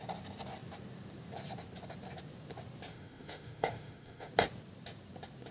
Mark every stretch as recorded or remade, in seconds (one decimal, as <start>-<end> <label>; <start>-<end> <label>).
0.0-2.9 recorded; 2.9-4.3 remade; 4.3-5.5 recorded